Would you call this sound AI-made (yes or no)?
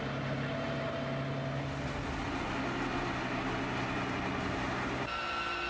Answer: no